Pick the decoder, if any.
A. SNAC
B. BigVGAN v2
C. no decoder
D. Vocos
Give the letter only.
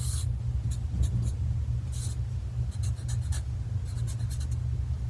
C